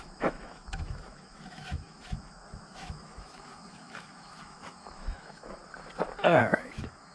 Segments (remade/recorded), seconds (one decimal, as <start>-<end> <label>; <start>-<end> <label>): 0.0-5.6 remade; 5.6-6.4 recorded; 6.4-7.1 remade